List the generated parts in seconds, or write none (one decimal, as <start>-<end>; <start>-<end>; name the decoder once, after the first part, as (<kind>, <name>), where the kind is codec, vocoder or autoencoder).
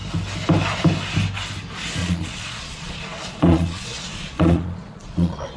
2.0-5.6 (vocoder, Vocos)